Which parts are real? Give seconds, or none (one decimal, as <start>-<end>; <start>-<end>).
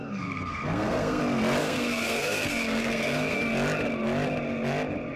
1.2-1.6; 3.4-5.2